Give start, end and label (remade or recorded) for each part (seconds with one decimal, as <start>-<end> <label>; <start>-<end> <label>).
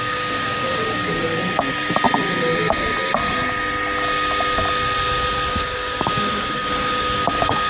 0.0-1.3 remade; 1.3-5.5 recorded; 5.5-7.7 remade